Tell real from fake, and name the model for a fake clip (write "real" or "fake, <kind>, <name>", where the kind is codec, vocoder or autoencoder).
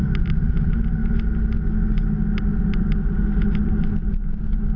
real